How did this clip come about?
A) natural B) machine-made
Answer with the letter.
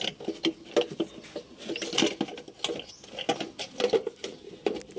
A